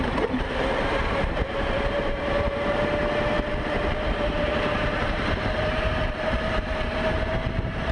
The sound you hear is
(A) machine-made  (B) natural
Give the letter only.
A